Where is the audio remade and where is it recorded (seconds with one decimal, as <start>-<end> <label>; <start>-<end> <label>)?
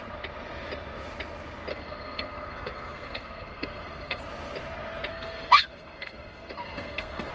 0.0-1.7 recorded; 1.7-4.2 remade; 4.2-5.1 recorded; 5.1-7.3 remade